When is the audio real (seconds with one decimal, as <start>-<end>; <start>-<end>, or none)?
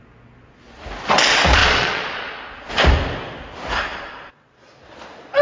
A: 0.0-1.6; 2.7-3.9; 4.7-5.4